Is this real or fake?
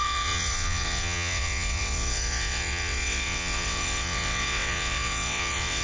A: fake